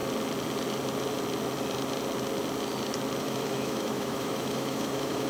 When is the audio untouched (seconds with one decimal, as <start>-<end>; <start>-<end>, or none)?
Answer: 0.0-3.2